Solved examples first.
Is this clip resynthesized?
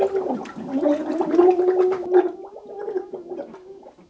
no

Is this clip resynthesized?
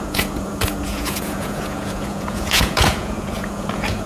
yes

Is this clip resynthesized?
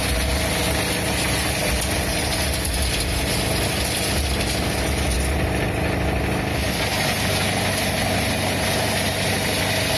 no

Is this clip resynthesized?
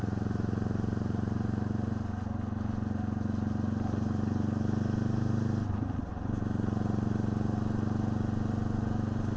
no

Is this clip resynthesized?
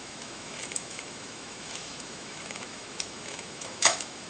yes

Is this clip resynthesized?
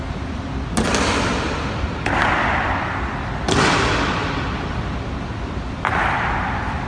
no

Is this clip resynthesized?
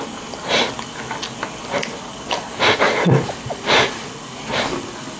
no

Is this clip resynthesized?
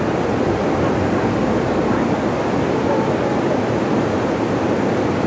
no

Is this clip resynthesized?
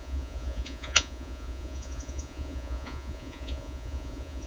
yes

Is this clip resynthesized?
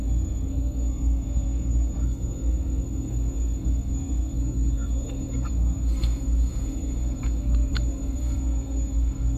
yes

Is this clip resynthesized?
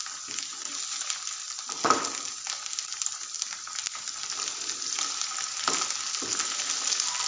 no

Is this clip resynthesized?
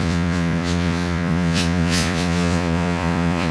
yes